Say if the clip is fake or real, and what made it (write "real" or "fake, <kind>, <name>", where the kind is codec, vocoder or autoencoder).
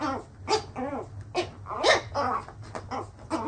real